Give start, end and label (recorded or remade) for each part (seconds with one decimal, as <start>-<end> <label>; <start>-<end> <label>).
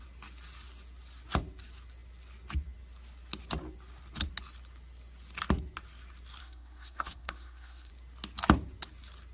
0.0-6.4 recorded; 6.4-7.9 remade; 7.9-9.3 recorded